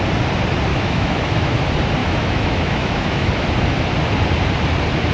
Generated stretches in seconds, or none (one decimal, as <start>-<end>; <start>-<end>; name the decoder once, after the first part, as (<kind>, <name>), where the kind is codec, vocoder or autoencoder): 0.7-1.5 (autoencoder, DAC-VAE); 2.0-3.3